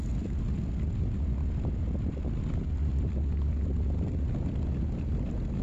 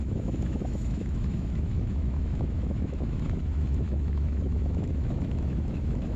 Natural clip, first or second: first